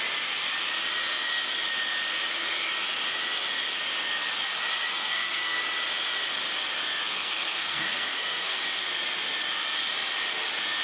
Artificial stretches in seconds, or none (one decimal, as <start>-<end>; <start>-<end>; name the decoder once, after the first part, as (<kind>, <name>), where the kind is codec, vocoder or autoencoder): 5.0-5.6 (codec, SNAC); 7.1-8.6